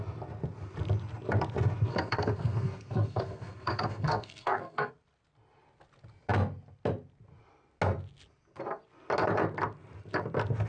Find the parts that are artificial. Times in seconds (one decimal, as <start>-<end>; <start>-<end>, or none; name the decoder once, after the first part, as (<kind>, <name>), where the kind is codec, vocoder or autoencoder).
1.9-4.9 (codec, SNAC)